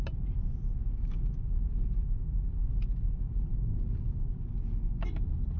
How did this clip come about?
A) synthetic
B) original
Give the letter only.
B